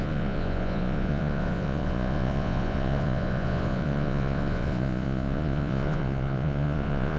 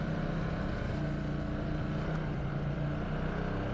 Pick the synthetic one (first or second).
first